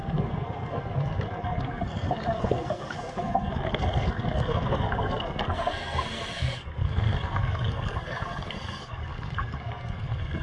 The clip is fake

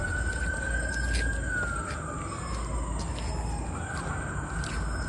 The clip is real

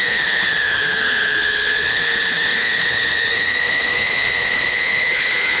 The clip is fake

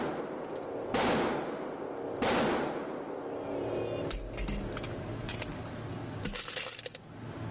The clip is real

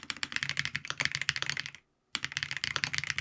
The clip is real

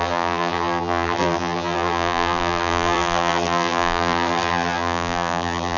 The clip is fake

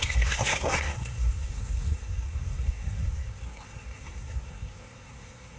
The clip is fake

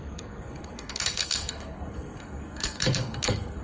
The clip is fake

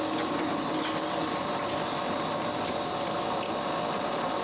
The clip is real